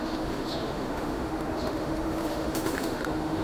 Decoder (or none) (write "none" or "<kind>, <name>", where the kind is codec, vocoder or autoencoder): autoencoder, DAC-VAE